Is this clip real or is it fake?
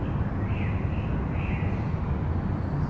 real